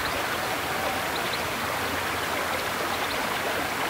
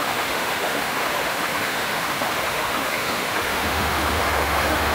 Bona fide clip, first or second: first